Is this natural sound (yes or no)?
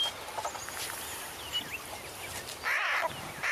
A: yes